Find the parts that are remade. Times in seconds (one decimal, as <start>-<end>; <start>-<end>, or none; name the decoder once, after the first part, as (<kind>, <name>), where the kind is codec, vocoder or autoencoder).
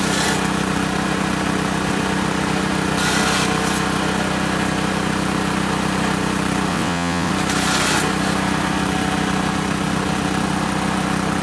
6.7-7.3 (vocoder, WaveNeXt)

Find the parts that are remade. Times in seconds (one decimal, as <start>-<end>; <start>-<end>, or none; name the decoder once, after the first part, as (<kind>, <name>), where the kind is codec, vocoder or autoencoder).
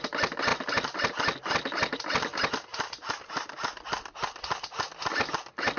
none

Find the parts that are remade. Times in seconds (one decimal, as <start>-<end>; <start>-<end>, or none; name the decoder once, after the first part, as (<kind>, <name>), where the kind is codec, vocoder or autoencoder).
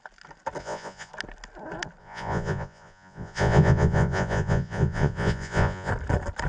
0.6-1.1 (vocoder, Vocos); 2.0-5.9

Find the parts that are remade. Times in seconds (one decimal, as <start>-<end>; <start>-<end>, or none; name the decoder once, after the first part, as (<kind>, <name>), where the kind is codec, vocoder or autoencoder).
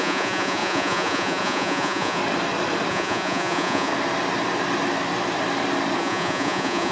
0.0-2.2 (vocoder, Vocos); 2.9-3.9; 6.0-6.9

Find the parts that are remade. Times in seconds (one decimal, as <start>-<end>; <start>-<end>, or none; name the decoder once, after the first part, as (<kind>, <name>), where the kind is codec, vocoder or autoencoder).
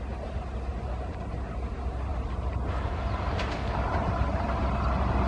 none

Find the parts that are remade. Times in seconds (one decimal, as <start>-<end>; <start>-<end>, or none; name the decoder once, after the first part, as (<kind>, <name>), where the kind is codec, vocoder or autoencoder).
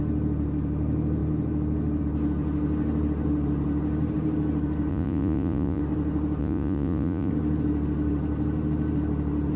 4.9-5.8 (vocoder, Vocos); 6.4-7.3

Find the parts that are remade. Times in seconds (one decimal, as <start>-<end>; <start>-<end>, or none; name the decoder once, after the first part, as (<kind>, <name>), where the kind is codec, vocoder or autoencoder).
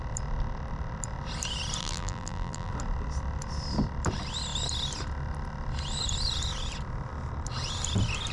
1.8-2.7 (vocoder, BigVGAN v2)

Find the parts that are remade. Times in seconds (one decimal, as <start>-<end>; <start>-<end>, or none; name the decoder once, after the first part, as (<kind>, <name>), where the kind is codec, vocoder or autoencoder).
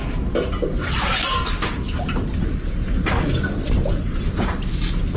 none